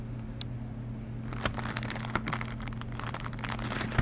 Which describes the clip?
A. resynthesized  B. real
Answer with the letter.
B